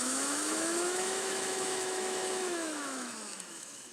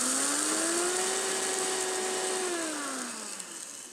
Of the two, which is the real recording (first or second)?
second